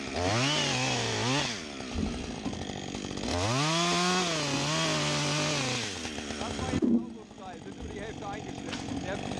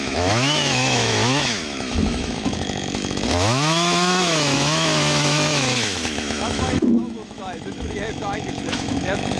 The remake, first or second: second